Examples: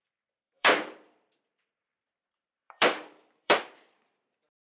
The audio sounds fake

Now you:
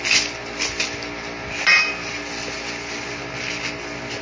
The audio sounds real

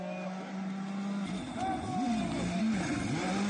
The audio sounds real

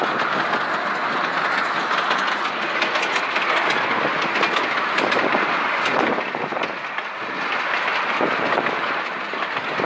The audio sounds real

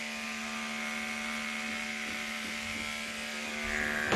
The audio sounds real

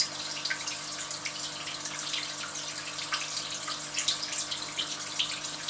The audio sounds real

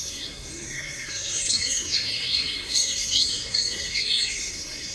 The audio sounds fake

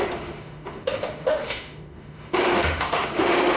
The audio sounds fake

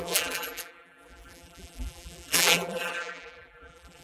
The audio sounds fake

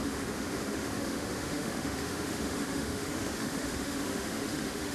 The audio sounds fake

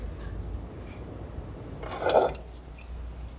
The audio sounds real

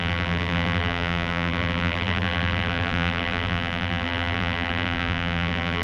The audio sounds fake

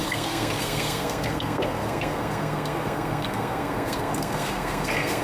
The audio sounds fake